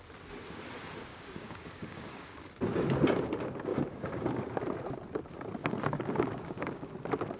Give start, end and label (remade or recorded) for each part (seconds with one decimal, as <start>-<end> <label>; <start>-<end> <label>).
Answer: 0.0-1.1 recorded; 1.1-2.4 remade; 2.4-3.7 recorded; 3.7-4.5 remade; 4.5-5.6 recorded; 5.6-6.9 remade; 6.9-7.4 recorded